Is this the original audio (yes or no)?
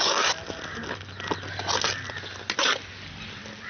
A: yes